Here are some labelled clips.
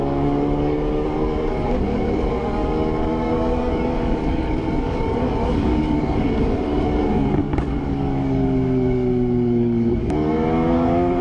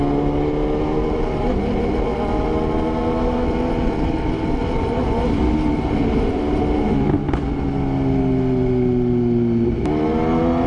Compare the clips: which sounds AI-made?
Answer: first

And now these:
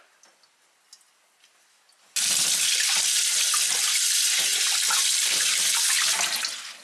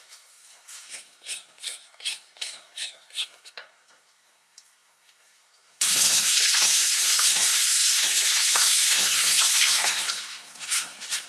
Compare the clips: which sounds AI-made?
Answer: second